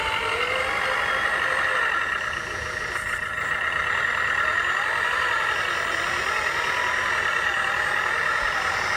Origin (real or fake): real